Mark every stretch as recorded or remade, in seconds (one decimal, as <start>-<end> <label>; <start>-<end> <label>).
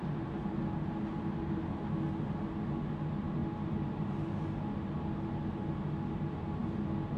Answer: 0.0-7.2 recorded